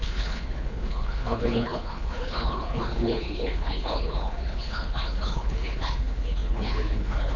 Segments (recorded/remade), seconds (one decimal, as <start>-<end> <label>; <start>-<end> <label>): 0.0-7.4 remade